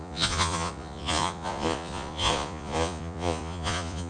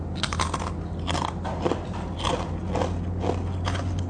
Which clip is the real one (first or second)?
second